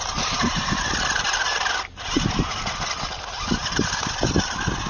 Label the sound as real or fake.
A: real